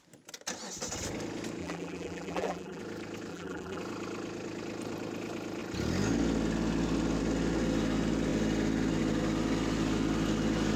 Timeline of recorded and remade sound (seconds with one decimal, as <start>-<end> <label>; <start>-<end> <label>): 0.0-1.6 recorded; 1.6-2.8 remade; 2.8-3.3 recorded; 3.3-3.8 remade; 3.8-10.8 recorded

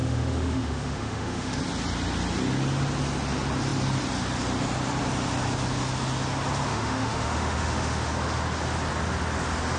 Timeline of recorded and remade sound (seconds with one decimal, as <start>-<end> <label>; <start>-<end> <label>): 0.0-1.6 remade; 1.6-6.7 recorded; 6.7-8.1 remade; 8.1-9.8 recorded

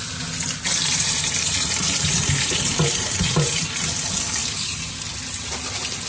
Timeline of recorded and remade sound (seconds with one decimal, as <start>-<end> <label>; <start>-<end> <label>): 0.0-0.9 recorded; 0.9-4.0 remade; 4.0-4.4 recorded; 4.4-4.9 remade; 4.9-6.1 recorded

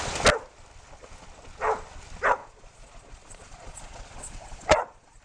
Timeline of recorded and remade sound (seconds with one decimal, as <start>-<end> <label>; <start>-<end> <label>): 0.0-2.4 recorded; 2.4-5.2 remade

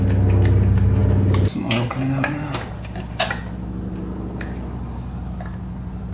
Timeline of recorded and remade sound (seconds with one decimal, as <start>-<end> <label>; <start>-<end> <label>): 0.0-6.1 recorded